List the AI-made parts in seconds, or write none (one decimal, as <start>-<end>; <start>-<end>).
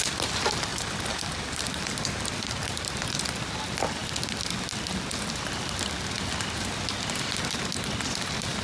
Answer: 0.7-2.5